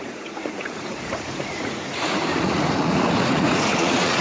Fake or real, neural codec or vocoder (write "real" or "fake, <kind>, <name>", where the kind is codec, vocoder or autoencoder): fake, vocoder, Vocos